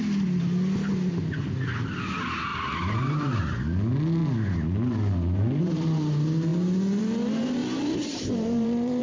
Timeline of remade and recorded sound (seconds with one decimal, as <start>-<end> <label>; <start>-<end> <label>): 0.0-2.5 recorded; 2.5-3.4 remade; 3.4-7.6 recorded; 7.6-9.0 remade